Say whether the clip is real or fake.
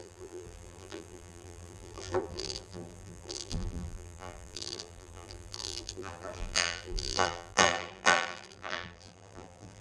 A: fake